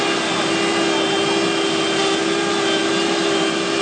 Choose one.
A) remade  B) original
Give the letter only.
B